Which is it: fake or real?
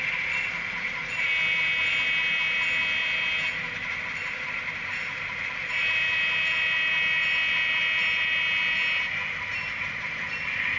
real